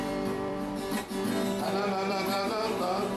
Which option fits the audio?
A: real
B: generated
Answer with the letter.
B